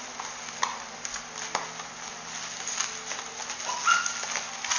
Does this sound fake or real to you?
real